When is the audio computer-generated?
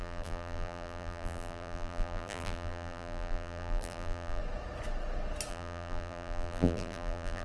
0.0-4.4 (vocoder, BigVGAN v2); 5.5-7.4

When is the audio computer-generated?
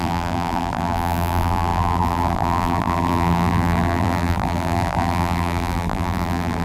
0.0-6.6 (vocoder, BigVGAN v2)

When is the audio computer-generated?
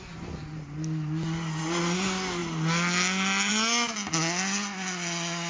none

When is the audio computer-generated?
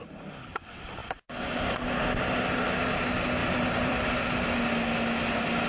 3.4-4.1 (vocoder, BigVGAN v2)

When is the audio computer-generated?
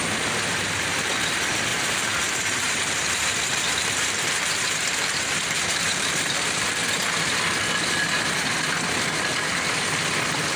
1.7-6.7 (vocoder, BigVGAN v2)